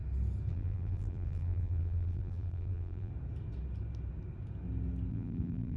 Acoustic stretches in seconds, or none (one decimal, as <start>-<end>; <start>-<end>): 0.0-0.5; 3.1-5.1